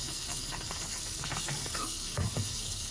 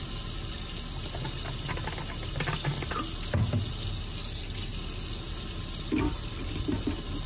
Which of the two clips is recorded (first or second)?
second